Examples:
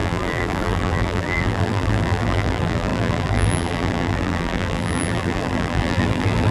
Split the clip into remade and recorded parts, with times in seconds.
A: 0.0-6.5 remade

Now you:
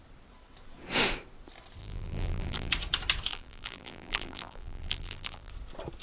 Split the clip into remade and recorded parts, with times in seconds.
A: 0.0-1.8 recorded; 1.8-2.7 remade; 2.7-3.3 recorded; 3.3-5.5 remade; 5.5-6.0 recorded

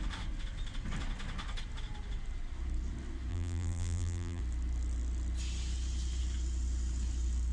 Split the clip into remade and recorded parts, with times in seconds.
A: 0.0-3.3 recorded; 3.3-4.4 remade; 4.4-7.5 recorded

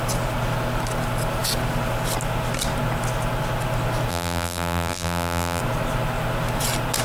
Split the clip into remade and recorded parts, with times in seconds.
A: 0.0-4.1 recorded; 4.1-5.6 remade; 5.6-7.0 recorded